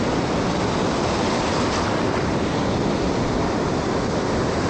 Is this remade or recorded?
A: recorded